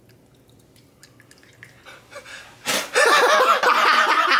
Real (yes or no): yes